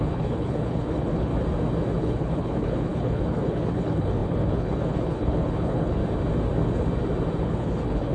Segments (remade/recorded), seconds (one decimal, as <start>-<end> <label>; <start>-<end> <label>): 0.0-1.3 remade; 1.3-2.0 recorded; 2.0-6.0 remade; 6.0-7.4 recorded; 7.4-8.1 remade